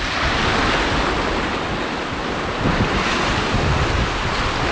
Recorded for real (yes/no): yes